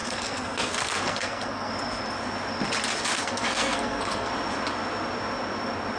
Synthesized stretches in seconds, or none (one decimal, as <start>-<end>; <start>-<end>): 0.0-1.7; 3.1-4.3